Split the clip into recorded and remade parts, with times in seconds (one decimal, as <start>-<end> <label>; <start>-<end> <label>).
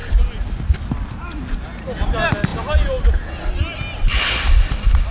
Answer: 0.0-2.5 recorded; 2.5-3.1 remade; 3.1-5.1 recorded